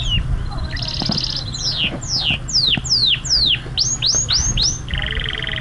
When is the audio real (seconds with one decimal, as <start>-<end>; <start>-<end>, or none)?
0.0-5.6